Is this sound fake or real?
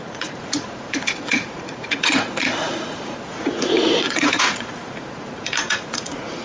fake